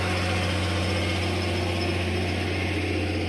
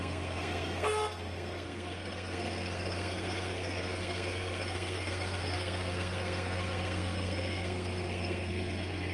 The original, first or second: first